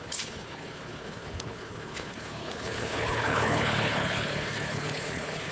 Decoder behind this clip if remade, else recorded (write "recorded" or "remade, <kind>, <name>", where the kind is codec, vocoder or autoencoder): remade, codec, HILCodec